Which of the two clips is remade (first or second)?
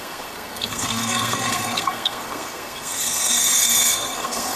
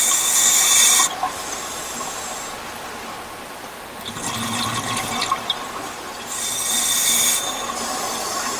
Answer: first